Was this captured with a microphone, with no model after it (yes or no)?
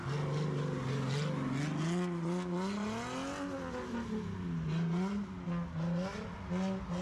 yes